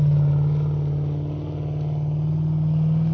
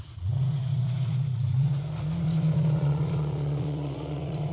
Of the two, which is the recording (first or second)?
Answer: first